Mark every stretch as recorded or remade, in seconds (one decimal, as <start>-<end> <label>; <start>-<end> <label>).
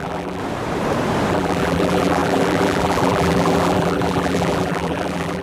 0.0-0.4 remade; 0.4-1.3 recorded; 1.3-5.4 remade